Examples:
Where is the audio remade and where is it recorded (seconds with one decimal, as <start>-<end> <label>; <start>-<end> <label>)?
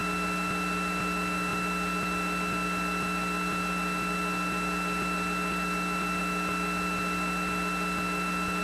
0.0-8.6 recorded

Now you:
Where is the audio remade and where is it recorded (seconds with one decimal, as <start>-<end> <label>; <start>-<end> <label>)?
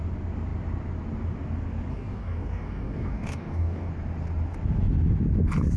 0.0-1.9 recorded; 1.9-3.9 remade; 3.9-5.8 recorded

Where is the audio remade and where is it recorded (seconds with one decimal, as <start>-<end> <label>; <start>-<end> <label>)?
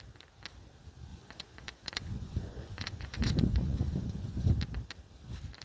0.0-1.1 recorded; 1.1-4.5 remade; 4.5-5.6 recorded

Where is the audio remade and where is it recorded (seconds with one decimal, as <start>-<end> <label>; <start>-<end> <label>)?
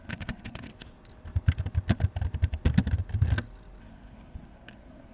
0.0-0.7 remade; 0.7-3.8 recorded; 3.8-5.1 remade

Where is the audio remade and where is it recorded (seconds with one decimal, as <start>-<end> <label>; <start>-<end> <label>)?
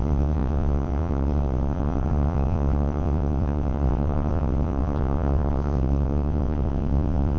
0.0-7.4 remade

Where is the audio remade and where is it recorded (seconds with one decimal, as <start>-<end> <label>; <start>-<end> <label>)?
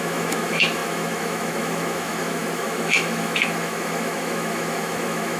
0.0-5.4 remade